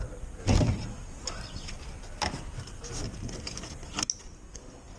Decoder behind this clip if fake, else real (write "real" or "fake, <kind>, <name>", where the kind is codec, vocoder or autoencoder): real